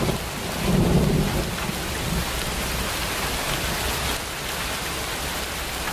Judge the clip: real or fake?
real